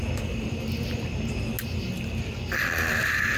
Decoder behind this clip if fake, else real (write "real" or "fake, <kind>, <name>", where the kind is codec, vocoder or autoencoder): real